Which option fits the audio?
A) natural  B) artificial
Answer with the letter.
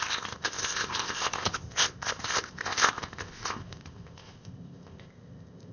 B